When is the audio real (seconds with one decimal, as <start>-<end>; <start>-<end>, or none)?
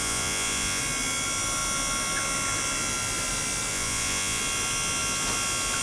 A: 0.8-3.7; 4.4-5.8